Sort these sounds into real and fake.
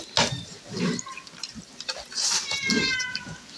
real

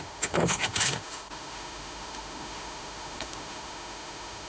fake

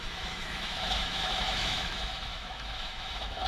fake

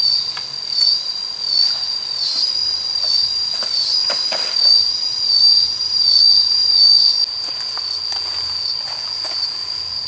real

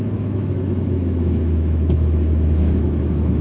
fake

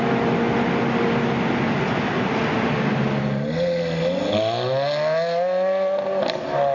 real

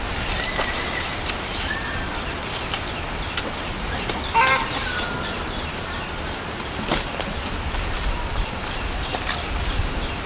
real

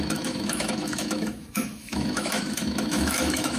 fake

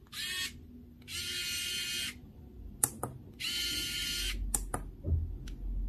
real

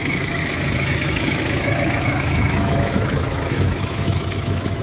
fake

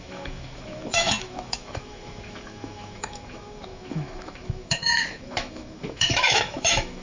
fake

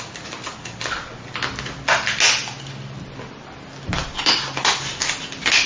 real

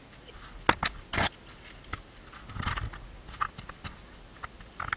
real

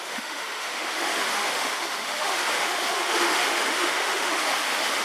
fake